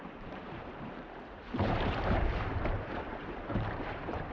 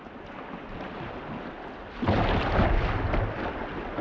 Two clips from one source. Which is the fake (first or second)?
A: first